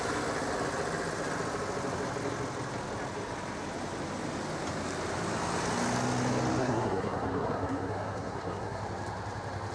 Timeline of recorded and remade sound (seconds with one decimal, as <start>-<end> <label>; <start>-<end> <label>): 0.0-6.6 recorded; 6.6-8.8 remade; 8.8-9.7 recorded